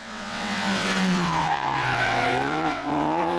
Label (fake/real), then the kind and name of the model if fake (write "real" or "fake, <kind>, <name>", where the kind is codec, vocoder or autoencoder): fake, vocoder, WaveNeXt